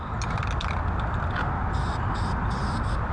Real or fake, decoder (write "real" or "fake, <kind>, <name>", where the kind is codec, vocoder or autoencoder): real